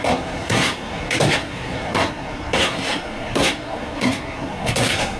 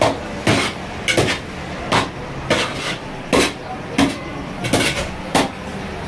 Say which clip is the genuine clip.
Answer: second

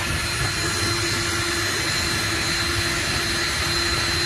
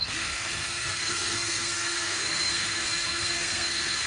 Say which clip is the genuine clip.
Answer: first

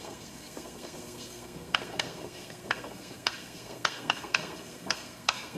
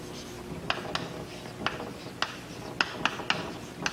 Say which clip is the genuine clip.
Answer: second